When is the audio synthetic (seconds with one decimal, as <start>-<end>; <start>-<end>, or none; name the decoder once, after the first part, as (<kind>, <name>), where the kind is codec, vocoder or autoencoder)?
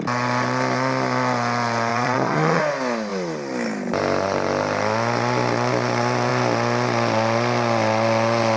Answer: 1.9-2.6 (vocoder, Vocos)